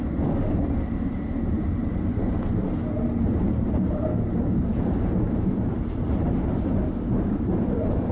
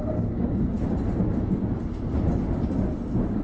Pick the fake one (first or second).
first